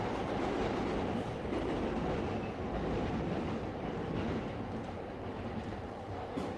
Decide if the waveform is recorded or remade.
recorded